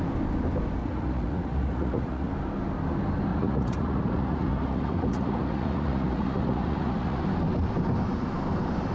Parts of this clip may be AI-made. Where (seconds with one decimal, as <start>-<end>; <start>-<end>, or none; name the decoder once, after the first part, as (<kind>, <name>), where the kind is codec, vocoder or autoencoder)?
0.8-2.3 (vocoder, Vocos); 3.3-7.2